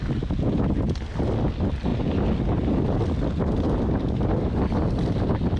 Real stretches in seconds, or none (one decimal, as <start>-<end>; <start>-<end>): 0.0-5.6